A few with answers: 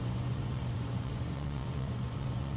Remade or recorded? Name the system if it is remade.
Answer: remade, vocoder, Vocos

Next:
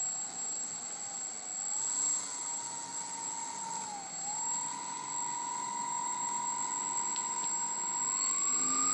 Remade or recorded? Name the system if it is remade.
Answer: recorded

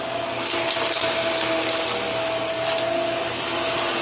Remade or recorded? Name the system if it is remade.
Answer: recorded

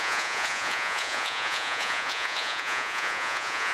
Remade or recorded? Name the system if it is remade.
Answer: remade, vocoder, Vocos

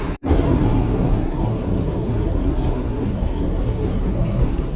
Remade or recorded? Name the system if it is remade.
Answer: remade, codec, SNAC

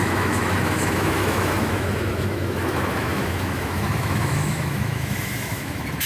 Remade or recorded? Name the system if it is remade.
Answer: remade, autoencoder, DAC-VAE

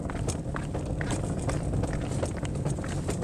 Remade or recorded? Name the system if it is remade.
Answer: recorded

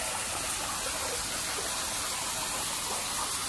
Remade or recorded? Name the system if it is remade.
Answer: recorded